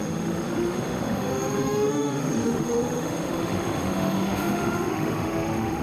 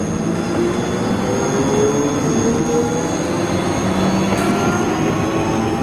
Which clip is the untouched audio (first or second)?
second